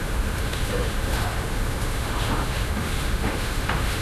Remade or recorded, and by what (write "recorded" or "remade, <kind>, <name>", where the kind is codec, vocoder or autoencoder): remade, autoencoder, DAC-VAE